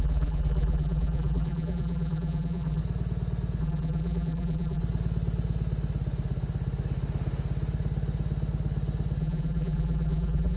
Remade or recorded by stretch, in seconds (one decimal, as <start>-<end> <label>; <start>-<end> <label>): 0.0-2.8 remade; 2.8-3.6 recorded; 3.6-4.8 remade; 4.8-9.2 recorded; 9.2-10.6 remade